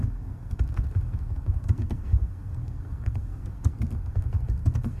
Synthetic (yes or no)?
yes